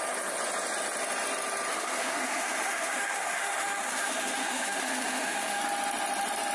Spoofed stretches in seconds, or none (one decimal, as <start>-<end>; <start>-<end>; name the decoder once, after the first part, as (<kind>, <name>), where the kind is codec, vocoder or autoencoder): 1.7-5.6 (autoencoder, DAC-VAE)

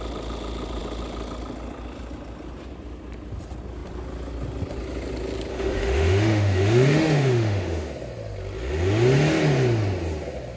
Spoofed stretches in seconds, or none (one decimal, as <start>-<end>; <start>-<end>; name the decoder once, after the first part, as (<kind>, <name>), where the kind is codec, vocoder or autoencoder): 5.5-7.9 (autoencoder, DAC-VAE)

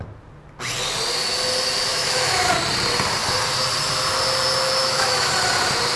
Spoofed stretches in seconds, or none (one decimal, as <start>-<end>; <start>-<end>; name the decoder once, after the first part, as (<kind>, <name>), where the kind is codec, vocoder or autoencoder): 1.9-2.5 (autoencoder, DAC-VAE); 4.8-5.3

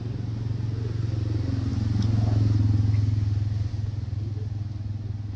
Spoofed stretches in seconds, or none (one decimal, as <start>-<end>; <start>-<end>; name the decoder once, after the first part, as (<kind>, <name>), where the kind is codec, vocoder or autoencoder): none